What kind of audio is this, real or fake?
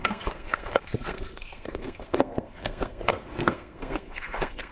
fake